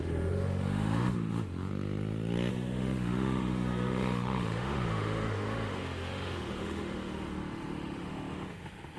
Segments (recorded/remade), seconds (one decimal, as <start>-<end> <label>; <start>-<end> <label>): 0.0-1.7 remade; 1.7-2.5 recorded; 2.5-9.0 remade